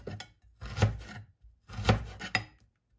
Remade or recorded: recorded